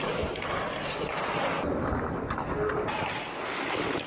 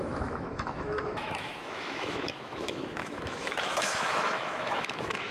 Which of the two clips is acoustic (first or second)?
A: first